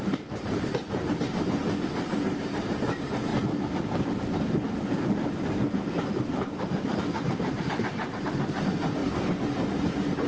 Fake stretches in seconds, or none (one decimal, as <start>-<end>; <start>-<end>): 0.0-1.6; 2.4-3.3; 5.0-9.0